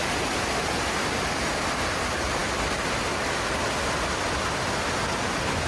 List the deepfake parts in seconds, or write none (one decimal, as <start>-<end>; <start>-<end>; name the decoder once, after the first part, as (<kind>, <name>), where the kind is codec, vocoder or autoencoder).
none